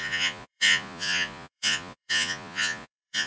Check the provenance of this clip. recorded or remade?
remade